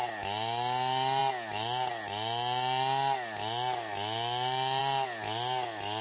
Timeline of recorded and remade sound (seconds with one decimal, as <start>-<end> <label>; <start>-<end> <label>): 0.0-6.0 recorded